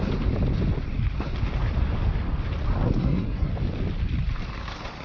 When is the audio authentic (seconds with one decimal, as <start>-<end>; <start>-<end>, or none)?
0.0-3.0; 3.5-5.0